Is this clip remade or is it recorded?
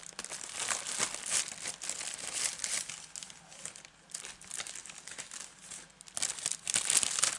recorded